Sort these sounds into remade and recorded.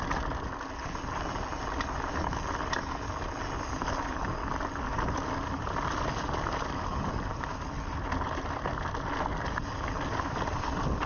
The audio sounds recorded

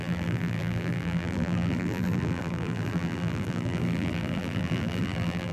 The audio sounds remade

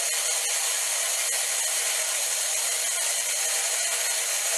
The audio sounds recorded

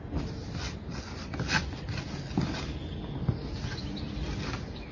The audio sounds recorded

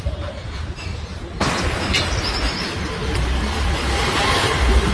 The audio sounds remade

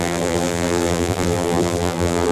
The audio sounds remade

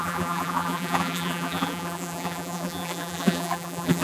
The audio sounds remade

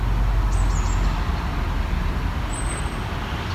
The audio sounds recorded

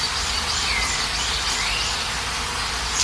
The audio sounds recorded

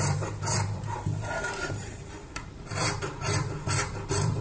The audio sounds remade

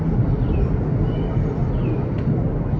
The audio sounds recorded